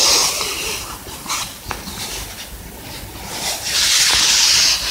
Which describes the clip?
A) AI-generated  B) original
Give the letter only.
B